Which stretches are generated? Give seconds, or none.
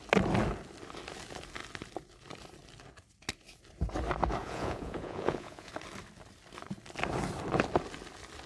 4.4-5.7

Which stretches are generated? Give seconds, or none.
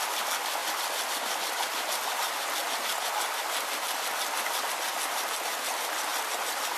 none